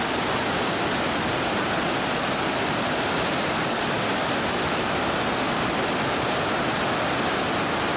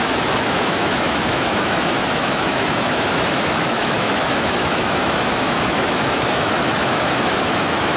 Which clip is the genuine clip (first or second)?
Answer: first